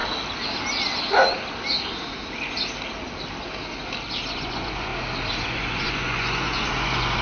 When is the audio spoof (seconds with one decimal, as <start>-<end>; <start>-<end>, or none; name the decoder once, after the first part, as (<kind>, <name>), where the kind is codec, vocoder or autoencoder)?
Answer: 4.3-4.9 (vocoder, Vocos); 5.5-7.2

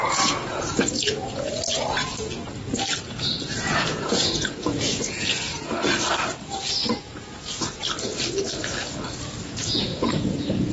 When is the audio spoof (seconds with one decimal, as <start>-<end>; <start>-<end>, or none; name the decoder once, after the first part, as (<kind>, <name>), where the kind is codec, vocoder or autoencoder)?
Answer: 0.0-1.5 (vocoder, Vocos); 3.5-5.5; 7.0-7.8; 9.4-10.7

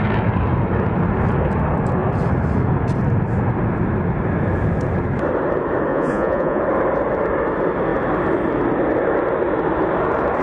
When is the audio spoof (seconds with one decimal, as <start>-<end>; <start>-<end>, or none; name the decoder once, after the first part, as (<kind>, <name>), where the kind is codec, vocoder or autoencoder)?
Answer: 5.9-6.6 (vocoder, Vocos)

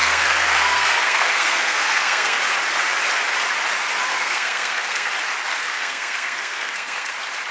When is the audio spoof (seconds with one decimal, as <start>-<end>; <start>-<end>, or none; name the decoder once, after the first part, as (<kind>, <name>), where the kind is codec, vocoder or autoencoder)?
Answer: 0.0-2.4 (codec, SNAC); 4.1-5.1; 5.5-7.1

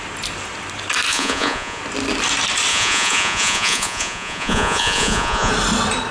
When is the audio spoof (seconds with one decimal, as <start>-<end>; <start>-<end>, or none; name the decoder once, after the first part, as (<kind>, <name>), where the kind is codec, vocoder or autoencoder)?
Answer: 1.1-1.8 (vocoder, Vocos); 2.7-5.5